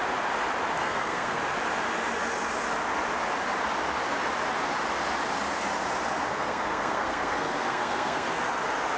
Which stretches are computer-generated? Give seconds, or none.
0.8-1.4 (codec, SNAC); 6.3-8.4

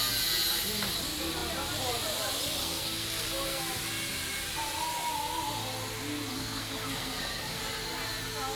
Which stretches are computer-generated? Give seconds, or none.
2.6-3.6 (codec, SNAC); 6.3-7.6

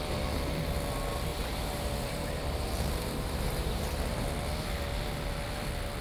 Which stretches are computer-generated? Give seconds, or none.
1.3-3.8 (vocoder, BigVGAN v2)

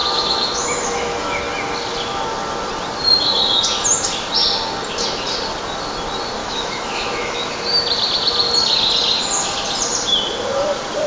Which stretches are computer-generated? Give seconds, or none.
0.0-1.4 (autoencoder, DAC-VAE); 6.4-7.6

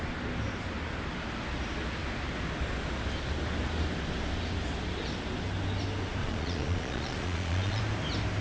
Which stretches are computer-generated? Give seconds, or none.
6.2-7.8 (vocoder, Vocos)

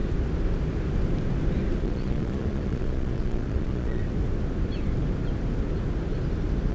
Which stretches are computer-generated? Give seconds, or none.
1.8-4.0 (vocoder, Vocos)